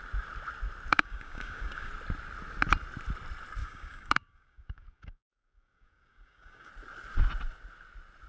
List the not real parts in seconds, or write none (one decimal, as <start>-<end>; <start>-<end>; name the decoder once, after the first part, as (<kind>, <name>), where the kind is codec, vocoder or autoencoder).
0.9-1.9 (codec, DAC); 3.6-6.7